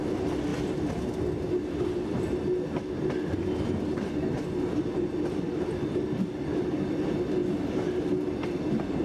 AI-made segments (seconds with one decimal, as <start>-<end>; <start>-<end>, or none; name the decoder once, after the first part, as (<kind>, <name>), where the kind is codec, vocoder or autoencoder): none